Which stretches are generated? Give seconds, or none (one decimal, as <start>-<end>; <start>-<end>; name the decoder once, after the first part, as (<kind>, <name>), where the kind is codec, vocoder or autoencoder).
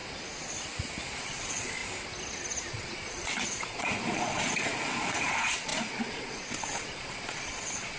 1.2-1.8 (vocoder, Vocos); 2.7-8.0